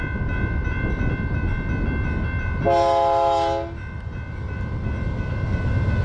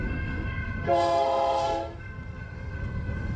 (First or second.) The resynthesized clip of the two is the second